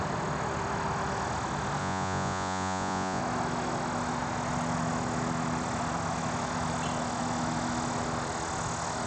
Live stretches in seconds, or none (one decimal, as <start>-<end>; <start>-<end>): 0.0-1.8; 3.2-9.1